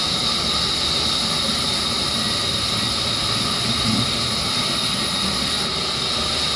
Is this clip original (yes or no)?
yes